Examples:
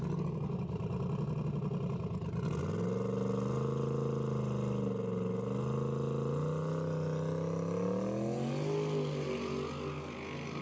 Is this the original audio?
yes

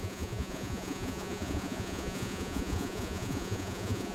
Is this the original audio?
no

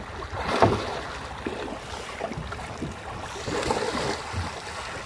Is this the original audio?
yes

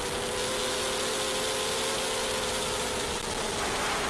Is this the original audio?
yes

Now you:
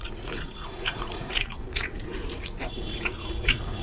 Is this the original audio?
no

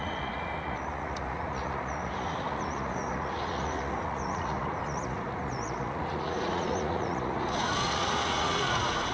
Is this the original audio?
no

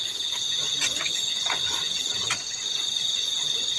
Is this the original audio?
no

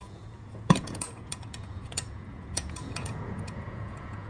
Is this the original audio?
no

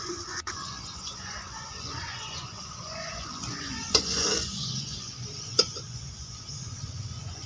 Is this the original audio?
no